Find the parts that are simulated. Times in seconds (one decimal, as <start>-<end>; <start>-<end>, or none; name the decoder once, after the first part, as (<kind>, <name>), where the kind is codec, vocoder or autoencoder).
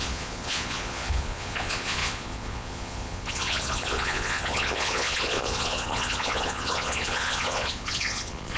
0.0-8.6 (vocoder, Vocos)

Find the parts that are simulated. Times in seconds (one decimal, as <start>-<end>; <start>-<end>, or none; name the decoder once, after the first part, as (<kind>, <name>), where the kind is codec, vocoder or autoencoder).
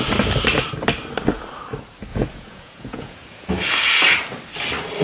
2.1-3.5 (vocoder, Vocos)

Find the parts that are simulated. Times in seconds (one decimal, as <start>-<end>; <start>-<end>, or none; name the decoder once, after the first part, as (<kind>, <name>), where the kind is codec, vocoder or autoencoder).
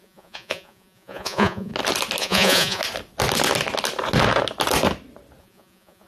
0.0-1.7 (vocoder, Vocos); 2.2-2.8; 5.4-6.1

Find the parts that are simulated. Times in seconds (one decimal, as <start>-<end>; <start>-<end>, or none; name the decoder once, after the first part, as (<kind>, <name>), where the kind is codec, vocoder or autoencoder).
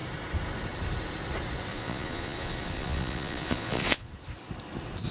1.7-4.1 (vocoder, Vocos)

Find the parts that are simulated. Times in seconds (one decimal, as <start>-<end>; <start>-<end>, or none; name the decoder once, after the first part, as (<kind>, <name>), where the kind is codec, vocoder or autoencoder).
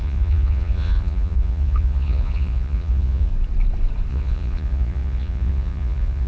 0.0-3.3 (vocoder, Vocos); 4.1-6.3